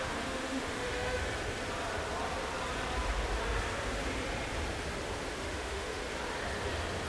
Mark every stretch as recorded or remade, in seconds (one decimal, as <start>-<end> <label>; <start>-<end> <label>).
0.0-1.2 remade; 1.2-5.4 recorded; 5.4-6.0 remade; 6.0-7.1 recorded